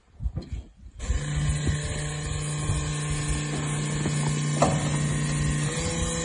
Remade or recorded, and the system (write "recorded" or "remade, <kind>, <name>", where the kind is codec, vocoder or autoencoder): recorded